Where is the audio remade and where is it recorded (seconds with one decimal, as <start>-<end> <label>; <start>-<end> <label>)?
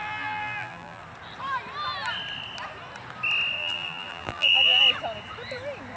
0.0-1.0 remade; 1.0-3.6 recorded; 3.6-4.8 remade; 4.8-6.0 recorded